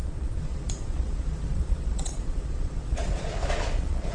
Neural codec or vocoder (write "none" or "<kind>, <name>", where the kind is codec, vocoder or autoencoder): vocoder, Vocos